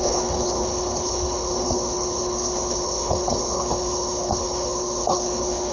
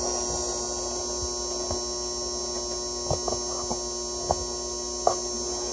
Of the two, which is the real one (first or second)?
second